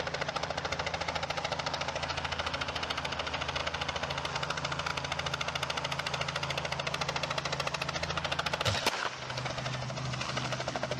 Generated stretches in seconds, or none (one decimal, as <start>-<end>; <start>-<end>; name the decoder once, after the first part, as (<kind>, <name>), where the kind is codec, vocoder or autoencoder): none